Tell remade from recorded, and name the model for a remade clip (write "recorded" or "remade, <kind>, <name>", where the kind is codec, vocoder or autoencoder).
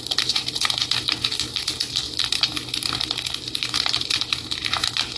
remade, vocoder, BigVGAN v2